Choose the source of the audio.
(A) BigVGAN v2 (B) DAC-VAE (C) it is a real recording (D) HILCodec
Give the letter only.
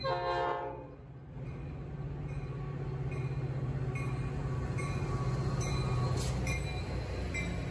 C